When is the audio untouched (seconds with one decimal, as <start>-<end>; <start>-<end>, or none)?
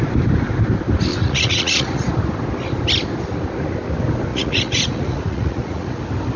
0.0-1.1; 2.1-4.3; 6.0-6.4